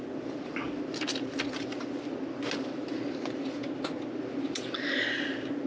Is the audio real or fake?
real